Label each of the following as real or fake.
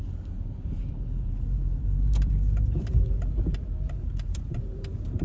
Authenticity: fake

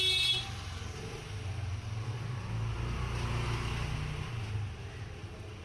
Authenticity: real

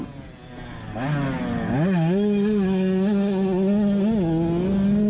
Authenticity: real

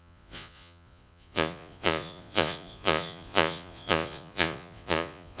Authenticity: fake